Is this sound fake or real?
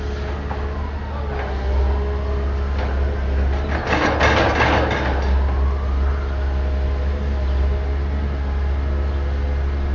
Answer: real